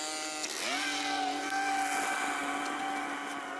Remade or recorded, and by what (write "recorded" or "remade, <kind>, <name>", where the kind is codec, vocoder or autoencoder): recorded